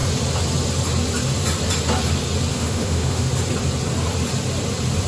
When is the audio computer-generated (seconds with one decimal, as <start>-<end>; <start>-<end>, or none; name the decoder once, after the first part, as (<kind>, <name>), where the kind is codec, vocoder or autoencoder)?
2.5-3.3 (autoencoder, DAC-VAE)